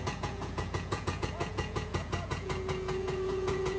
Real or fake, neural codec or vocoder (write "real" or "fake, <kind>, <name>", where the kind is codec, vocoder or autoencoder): fake, vocoder, Vocos